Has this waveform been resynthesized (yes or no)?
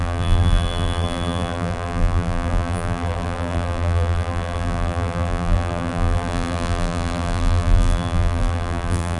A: yes